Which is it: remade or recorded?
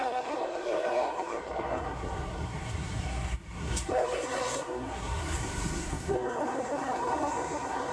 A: remade